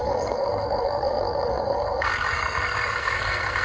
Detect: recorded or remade remade